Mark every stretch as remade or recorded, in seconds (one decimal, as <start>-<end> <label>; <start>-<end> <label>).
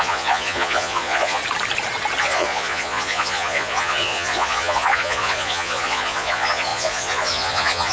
0.0-1.4 remade; 1.4-2.2 recorded; 2.2-7.9 remade